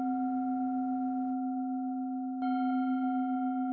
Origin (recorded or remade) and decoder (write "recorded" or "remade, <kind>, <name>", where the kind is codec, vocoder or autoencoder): recorded